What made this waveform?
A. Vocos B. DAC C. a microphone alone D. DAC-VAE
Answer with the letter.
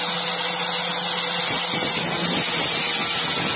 C